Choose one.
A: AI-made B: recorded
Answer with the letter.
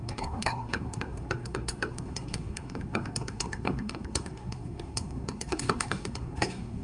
A